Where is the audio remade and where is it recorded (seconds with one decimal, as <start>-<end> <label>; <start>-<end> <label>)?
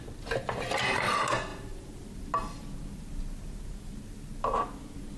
0.0-5.2 recorded